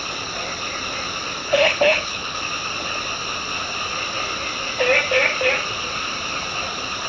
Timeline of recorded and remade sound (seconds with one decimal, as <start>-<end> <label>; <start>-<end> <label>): 0.0-1.4 recorded; 1.4-2.4 remade; 2.4-7.1 recorded